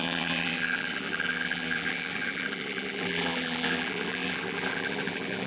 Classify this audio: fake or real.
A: fake